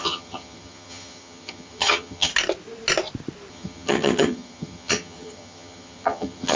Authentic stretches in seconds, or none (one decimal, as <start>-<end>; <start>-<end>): 2.3-3.5